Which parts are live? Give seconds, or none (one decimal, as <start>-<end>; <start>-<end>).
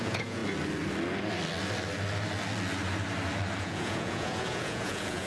0.4-3.6